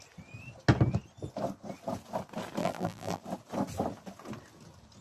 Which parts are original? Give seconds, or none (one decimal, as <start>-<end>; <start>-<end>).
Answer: 0.0-2.6; 3.2-5.0